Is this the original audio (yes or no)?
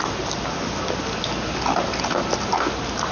yes